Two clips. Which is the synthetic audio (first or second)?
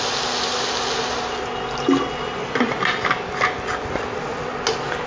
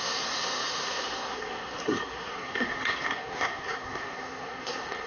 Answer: second